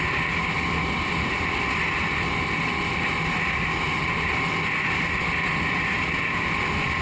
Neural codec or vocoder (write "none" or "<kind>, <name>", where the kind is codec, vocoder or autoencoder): none